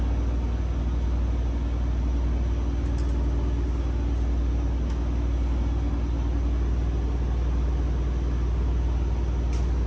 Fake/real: real